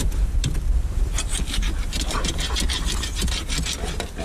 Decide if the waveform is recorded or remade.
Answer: recorded